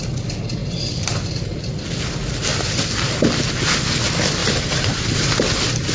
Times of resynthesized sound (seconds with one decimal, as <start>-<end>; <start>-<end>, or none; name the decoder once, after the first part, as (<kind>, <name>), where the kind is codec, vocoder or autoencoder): 0.6-1.5 (vocoder, BigVGAN v2); 2.5-3.1; 4.4-5.3